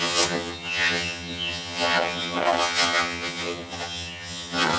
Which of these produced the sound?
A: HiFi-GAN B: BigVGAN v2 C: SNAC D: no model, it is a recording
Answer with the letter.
A